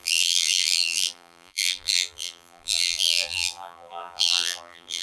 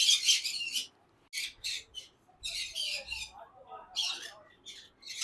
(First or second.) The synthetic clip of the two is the first